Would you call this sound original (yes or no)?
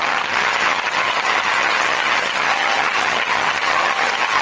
no